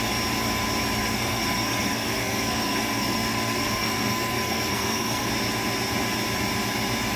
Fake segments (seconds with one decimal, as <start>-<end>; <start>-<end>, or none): 1.0-5.3